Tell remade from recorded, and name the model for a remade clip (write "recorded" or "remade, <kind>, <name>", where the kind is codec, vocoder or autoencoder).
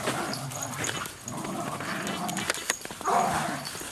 recorded